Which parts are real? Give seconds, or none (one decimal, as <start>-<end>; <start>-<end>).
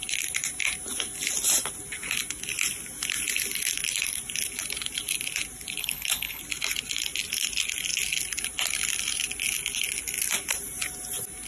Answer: 0.0-5.8; 6.4-11.5